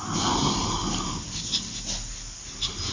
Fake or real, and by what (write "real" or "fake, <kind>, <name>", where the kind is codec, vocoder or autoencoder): real